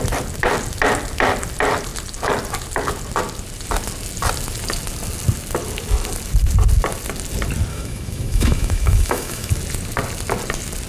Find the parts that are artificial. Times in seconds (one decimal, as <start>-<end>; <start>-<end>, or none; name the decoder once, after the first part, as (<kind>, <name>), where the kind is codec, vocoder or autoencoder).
7.7-9.5 (autoencoder, DAC-VAE)